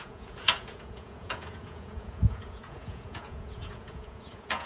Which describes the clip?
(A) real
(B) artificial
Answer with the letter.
B